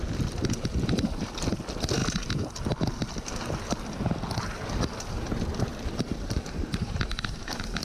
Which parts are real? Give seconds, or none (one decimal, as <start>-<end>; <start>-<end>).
0.0-5.7